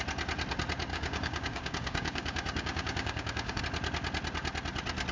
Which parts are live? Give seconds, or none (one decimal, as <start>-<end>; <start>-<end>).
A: 0.0-0.9; 3.6-5.1